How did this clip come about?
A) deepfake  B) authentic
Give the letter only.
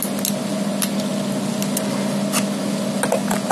B